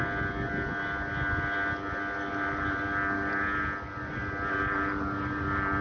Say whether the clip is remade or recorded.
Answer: recorded